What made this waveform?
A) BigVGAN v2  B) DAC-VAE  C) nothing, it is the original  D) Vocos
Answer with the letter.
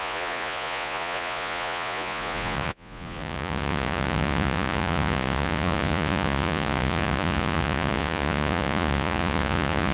D